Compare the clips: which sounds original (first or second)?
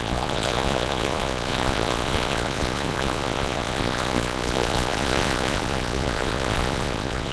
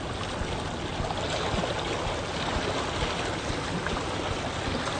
second